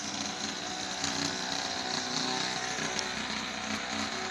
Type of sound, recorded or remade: recorded